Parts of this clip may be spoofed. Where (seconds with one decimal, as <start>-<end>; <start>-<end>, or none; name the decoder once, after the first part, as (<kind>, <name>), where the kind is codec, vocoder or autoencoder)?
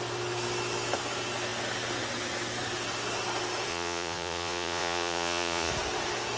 3.7-5.7 (vocoder, Vocos)